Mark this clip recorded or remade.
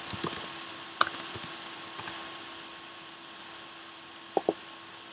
recorded